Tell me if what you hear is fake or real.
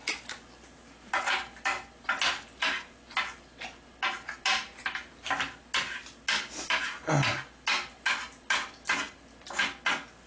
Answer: real